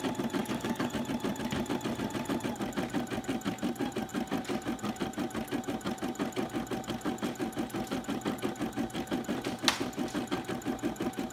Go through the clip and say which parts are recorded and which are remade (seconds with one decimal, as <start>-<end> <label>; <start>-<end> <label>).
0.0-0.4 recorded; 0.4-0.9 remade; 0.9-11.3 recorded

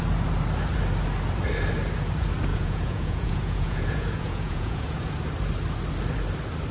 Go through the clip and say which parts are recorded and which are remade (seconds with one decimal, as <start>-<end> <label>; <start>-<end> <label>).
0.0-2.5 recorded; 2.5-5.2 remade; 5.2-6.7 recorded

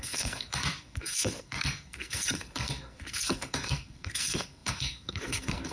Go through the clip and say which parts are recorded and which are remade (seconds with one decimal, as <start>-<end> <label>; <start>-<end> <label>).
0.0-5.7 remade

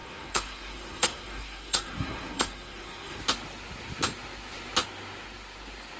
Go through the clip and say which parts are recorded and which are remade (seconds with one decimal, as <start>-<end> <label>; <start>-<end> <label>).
0.0-3.2 remade; 3.2-6.0 recorded